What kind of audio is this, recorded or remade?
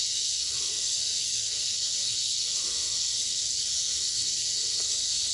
remade